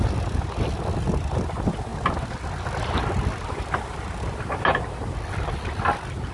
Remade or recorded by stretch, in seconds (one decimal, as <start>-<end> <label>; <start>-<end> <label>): 0.0-6.3 recorded